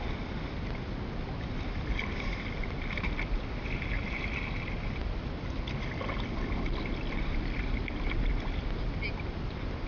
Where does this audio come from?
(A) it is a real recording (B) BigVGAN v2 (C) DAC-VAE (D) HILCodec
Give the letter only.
A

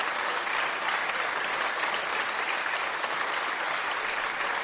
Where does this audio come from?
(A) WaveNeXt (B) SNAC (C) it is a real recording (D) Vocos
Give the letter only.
C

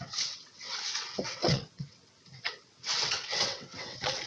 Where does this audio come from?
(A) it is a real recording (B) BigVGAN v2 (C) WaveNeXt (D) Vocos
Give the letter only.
C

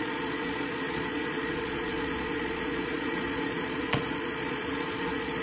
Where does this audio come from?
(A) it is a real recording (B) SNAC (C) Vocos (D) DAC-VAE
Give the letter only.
C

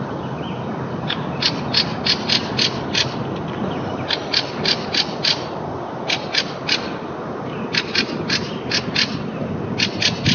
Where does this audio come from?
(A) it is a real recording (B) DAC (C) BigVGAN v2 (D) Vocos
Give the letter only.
A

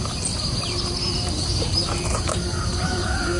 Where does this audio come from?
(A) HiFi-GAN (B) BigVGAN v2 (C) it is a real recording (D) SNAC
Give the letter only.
B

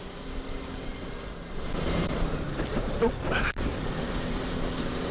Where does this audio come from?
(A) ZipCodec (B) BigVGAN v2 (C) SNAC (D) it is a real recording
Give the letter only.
B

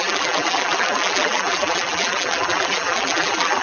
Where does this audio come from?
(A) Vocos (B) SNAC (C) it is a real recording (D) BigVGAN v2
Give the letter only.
D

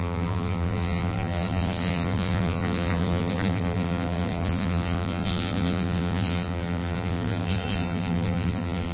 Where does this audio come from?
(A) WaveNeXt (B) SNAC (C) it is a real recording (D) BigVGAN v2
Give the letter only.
D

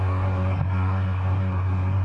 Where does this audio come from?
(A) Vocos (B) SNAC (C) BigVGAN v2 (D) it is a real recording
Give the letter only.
B